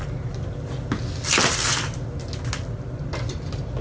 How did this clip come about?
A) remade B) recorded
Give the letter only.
B